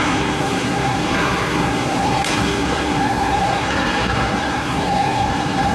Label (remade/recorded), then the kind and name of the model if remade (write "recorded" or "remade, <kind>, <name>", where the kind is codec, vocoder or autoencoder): remade, codec, SNAC